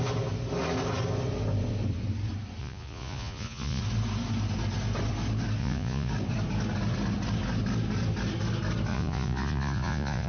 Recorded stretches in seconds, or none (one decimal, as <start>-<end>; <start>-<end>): 0.0-2.6; 3.8-5.6; 6.1-8.9